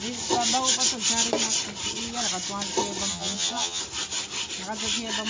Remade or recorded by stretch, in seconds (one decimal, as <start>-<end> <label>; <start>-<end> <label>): 0.0-3.1 recorded; 3.1-3.8 remade; 3.8-5.3 recorded